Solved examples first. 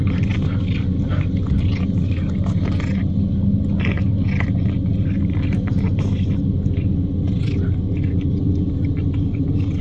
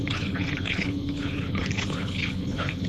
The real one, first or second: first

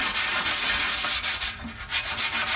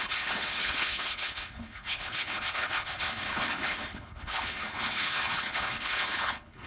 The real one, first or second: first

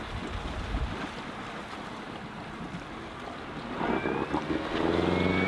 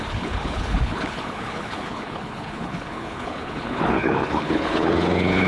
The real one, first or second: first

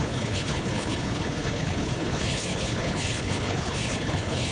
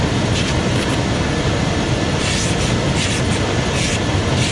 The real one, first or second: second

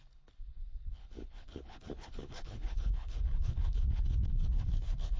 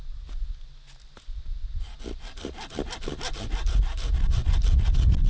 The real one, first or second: second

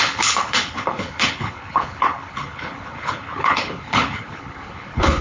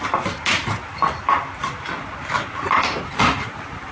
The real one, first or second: second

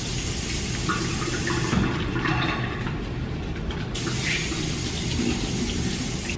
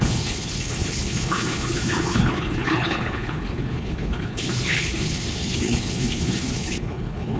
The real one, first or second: first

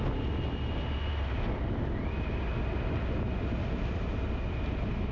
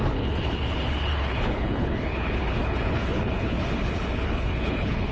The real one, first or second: first